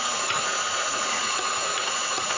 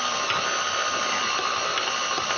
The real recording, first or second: second